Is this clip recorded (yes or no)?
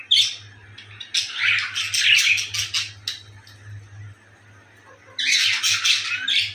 yes